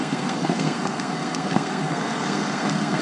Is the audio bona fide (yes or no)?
no